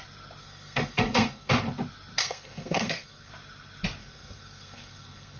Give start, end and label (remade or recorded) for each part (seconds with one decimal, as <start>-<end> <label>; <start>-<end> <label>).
0.0-0.4 recorded; 0.4-1.5 remade; 1.5-2.2 recorded; 2.2-3.3 remade; 3.3-4.0 recorded; 4.0-5.4 remade